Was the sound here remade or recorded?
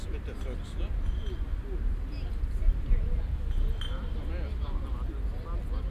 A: recorded